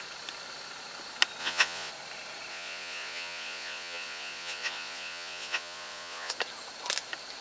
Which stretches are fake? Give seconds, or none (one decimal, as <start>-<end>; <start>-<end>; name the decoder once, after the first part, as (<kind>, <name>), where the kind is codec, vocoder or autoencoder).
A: 1.4-1.9 (vocoder, Vocos); 2.5-6.3